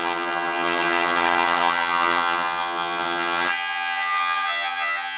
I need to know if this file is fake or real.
fake